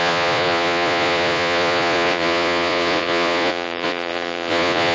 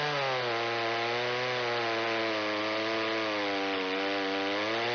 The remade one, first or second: first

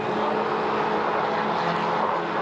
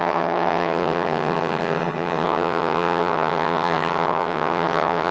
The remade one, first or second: second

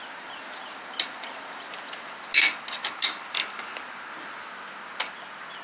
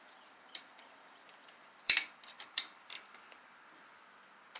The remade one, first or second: second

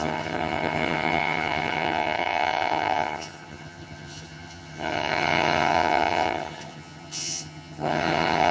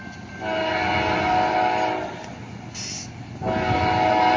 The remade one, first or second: first